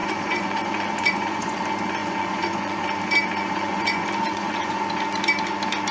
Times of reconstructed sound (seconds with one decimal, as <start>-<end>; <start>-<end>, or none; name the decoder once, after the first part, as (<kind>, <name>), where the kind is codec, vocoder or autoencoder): 0.0-1.6 (vocoder, Vocos); 2.0-2.8; 3.4-4.9